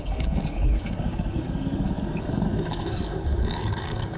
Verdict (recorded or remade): remade